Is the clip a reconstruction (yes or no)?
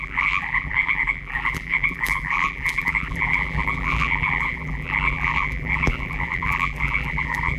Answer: yes